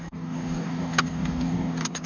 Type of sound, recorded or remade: remade